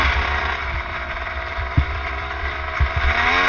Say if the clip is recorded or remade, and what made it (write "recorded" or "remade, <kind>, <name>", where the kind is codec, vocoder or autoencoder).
remade, vocoder, BigVGAN v2